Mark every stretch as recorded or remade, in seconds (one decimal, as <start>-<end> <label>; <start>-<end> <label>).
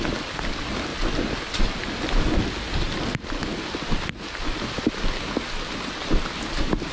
0.0-6.9 recorded